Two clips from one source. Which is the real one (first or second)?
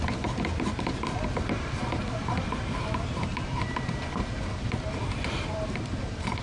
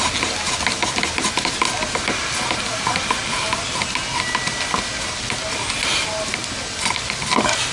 second